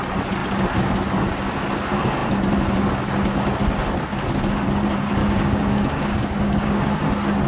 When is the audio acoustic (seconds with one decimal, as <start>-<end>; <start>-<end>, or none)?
0.0-5.2; 6.8-7.5